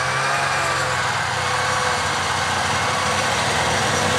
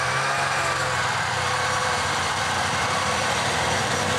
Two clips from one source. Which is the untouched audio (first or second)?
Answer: first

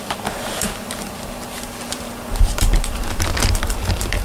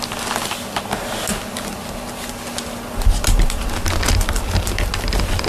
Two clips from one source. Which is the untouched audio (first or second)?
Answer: second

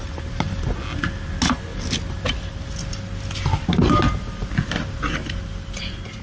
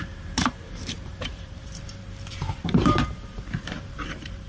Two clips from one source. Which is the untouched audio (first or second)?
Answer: first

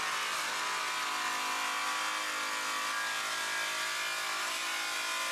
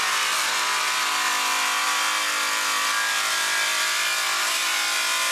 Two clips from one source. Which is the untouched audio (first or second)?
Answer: first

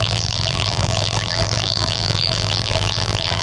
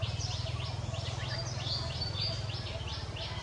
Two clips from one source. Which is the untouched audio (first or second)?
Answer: second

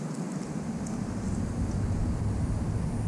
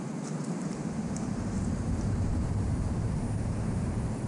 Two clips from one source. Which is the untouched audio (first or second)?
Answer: first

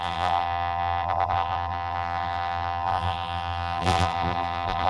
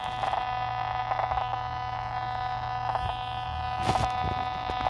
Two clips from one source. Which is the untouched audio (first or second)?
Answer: second